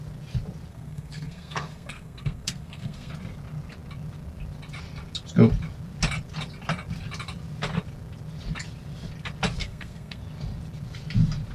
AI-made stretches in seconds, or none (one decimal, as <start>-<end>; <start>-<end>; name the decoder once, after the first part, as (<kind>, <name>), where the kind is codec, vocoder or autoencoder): 0.7-3.1 (codec, SNAC); 9.6-10.2